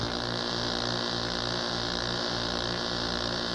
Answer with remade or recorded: recorded